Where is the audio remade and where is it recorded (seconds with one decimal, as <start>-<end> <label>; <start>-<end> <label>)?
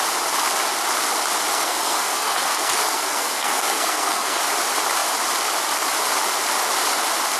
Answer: 0.0-1.5 recorded; 1.5-4.4 remade; 4.4-7.4 recorded